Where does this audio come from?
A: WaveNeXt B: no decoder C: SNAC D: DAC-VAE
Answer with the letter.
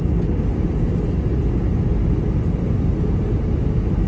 B